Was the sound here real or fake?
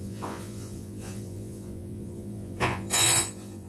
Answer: fake